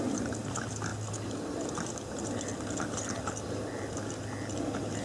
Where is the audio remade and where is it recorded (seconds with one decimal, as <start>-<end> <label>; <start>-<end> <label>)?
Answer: 0.0-5.0 recorded